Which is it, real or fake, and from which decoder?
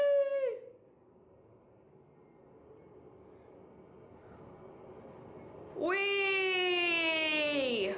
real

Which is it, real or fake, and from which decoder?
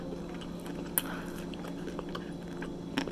real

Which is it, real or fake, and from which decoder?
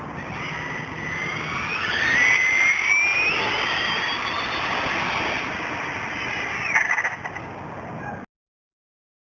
real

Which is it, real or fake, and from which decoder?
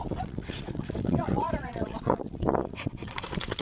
fake, vocoder, WaveNeXt